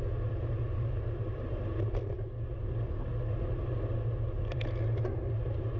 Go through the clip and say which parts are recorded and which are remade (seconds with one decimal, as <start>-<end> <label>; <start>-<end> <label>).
0.0-5.8 recorded